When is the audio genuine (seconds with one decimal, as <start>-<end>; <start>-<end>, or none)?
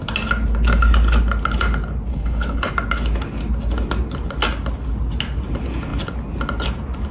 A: 0.0-2.1; 2.7-7.1